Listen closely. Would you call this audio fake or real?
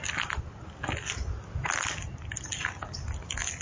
real